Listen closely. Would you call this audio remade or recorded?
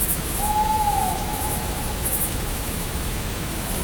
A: remade